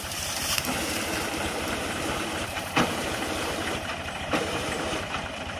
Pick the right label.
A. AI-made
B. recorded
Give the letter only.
A